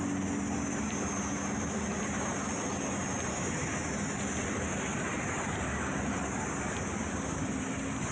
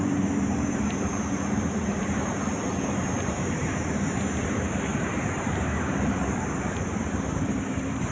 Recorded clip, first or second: first